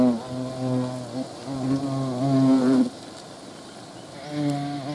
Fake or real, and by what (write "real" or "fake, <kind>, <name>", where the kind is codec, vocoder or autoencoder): real